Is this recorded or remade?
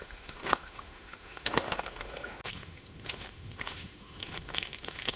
remade